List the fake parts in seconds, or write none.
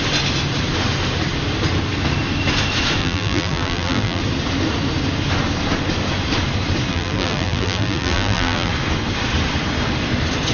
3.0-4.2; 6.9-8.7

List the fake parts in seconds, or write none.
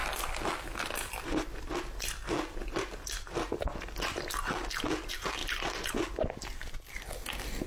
0.0-1.8; 5.4-5.9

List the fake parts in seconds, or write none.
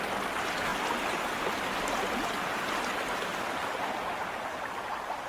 none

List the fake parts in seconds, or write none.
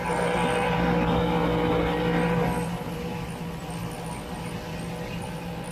none